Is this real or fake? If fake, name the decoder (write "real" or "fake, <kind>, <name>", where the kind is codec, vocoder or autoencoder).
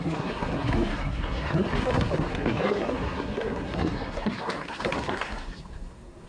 fake, codec, SNAC